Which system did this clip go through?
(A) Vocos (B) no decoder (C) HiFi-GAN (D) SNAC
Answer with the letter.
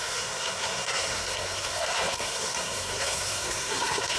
D